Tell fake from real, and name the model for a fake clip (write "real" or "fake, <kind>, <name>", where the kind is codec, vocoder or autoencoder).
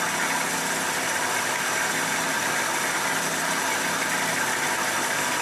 real